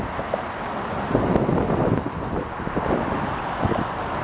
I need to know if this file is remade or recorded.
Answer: recorded